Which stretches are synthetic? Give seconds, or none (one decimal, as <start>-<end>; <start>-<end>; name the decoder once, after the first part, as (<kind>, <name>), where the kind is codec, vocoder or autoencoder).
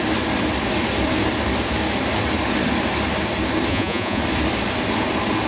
3.7-4.2 (vocoder, Vocos)